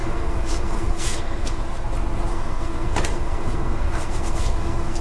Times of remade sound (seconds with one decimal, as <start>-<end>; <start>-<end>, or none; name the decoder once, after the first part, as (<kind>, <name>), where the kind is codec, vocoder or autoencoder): 0.0-1.6 (codec, SNAC); 2.3-5.0